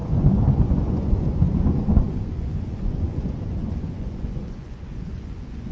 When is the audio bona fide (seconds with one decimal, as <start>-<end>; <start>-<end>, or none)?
none